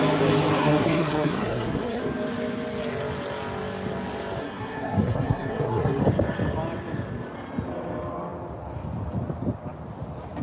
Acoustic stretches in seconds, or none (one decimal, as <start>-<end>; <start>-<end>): 0.0-0.6; 2.0-4.4; 6.0-10.4